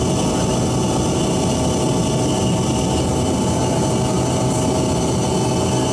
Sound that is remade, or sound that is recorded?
recorded